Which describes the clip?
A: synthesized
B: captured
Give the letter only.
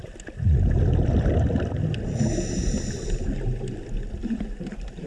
B